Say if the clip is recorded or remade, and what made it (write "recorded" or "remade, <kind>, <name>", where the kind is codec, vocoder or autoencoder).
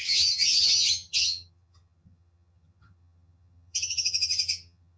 remade, vocoder, HiFi-GAN